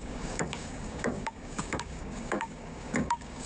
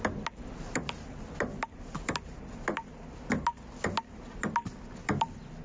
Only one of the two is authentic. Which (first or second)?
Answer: second